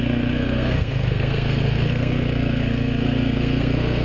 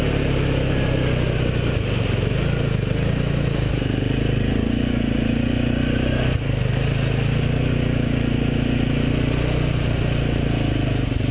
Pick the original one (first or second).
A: second